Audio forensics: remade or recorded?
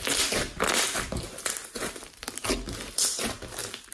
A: recorded